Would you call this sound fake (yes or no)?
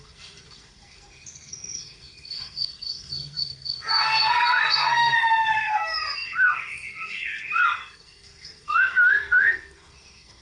yes